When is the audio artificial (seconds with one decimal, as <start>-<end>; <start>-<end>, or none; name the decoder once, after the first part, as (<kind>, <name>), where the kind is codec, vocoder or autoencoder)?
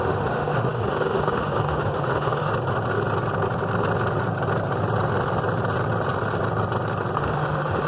0.0-2.5 (autoencoder, DAC-VAE); 7.2-7.9